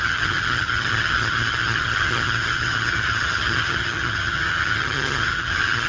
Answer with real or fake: fake